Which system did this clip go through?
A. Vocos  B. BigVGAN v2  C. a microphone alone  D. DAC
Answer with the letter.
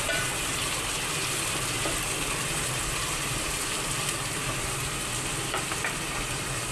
B